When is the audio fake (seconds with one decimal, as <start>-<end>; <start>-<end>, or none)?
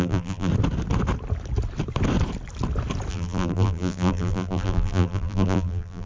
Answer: 0.0-0.5; 3.1-6.1